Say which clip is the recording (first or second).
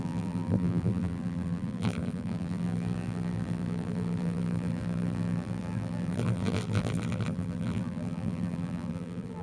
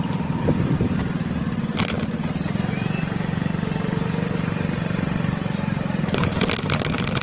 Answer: second